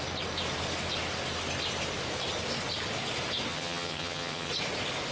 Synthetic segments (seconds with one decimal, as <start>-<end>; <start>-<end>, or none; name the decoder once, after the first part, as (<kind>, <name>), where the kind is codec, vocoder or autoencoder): 3.5-4.5 (vocoder, HiFi-GAN)

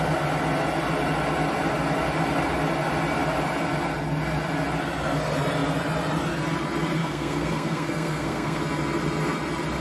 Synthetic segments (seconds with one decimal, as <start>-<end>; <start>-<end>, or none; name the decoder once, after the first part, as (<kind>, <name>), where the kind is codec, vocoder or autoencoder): 7.0-8.6 (codec, SNAC)

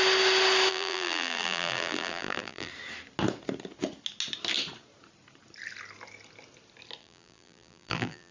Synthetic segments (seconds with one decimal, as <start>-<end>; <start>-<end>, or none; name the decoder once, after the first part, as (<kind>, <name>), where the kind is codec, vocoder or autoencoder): 0.7-2.7 (vocoder, BigVGAN v2); 7.0-8.3

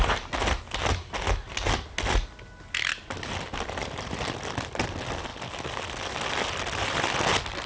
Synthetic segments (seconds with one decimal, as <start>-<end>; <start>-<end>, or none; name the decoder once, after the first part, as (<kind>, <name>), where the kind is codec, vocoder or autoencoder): none

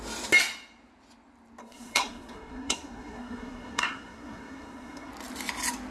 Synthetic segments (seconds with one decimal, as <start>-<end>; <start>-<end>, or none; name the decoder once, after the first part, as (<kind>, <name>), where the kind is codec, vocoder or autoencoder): 1.6-5.1 (codec, SNAC)

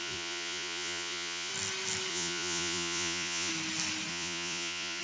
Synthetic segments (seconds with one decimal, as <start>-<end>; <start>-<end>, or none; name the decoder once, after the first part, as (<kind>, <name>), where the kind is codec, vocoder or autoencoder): 0.0-1.5 (vocoder, Vocos); 2.1-3.5; 4.1-5.0

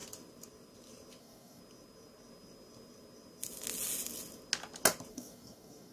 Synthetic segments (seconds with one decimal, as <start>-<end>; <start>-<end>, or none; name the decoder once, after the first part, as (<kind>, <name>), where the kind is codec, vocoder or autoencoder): 1.2-1.6 (codec, DAC); 5.1-5.9